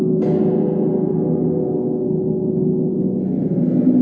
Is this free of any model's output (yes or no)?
yes